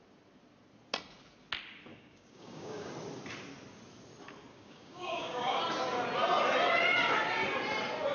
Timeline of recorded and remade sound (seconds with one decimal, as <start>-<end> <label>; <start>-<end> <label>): 0.0-1.9 recorded; 1.9-2.9 remade; 2.9-4.5 recorded; 4.5-5.6 remade; 5.6-8.1 recorded